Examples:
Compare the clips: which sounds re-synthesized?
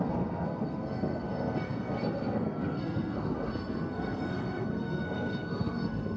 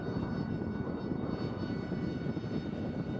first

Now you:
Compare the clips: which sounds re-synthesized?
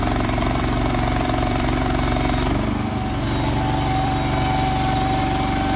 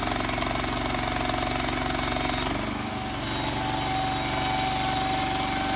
first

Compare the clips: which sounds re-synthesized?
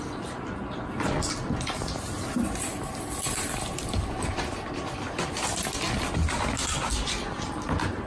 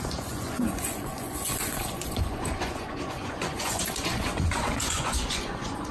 second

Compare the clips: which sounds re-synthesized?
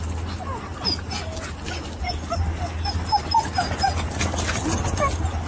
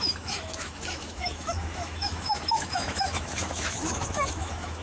second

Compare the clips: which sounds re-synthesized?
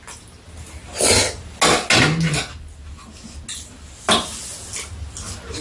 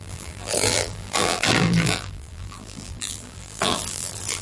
second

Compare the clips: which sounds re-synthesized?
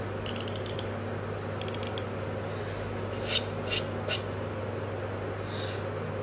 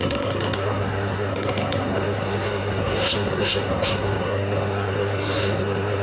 second